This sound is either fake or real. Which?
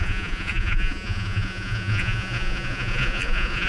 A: fake